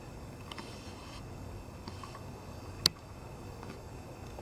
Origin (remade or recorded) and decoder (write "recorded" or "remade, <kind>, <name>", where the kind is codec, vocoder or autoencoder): remade, codec, DAC